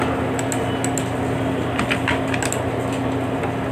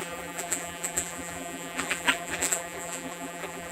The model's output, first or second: second